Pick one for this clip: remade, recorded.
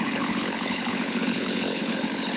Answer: remade